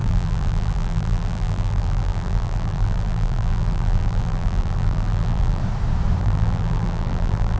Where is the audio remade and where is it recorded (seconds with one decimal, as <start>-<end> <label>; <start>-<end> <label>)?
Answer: 0.0-5.6 remade; 5.6-6.2 recorded; 6.2-7.6 remade